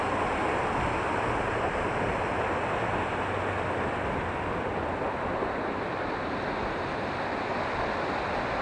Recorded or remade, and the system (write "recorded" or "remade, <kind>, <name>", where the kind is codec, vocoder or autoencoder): recorded